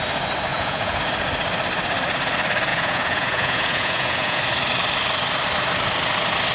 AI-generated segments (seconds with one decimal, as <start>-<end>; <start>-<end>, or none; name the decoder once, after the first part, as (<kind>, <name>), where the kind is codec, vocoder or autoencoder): 0.5-1.0 (vocoder, Vocos); 2.7-4.4